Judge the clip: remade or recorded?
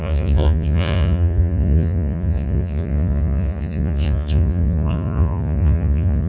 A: remade